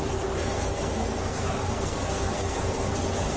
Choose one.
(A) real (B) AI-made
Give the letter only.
B